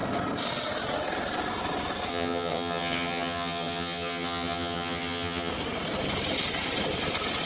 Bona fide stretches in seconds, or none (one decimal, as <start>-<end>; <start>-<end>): 0.0-2.1; 5.5-7.5